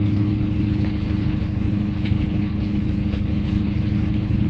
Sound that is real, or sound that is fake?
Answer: fake